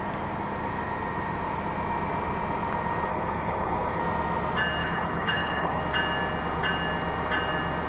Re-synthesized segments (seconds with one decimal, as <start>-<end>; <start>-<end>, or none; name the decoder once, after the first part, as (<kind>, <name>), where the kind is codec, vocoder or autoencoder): 3.1-4.0 (codec, HILCodec); 4.8-5.8